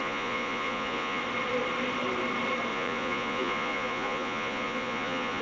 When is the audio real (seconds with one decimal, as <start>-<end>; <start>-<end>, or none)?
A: 1.2-2.7